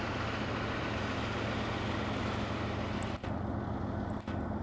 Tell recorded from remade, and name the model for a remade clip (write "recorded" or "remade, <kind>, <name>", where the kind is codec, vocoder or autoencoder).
recorded